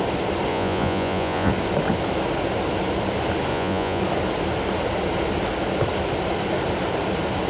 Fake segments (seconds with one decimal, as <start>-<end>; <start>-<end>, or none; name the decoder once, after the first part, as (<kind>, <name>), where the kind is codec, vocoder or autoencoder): 0.5-1.5 (vocoder, Vocos); 3.5-4.0